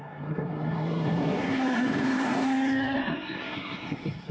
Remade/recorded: remade